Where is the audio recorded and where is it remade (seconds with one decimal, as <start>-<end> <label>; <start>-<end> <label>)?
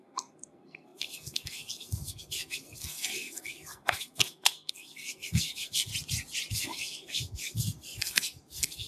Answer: 0.0-5.9 remade; 5.9-6.5 recorded; 6.5-8.9 remade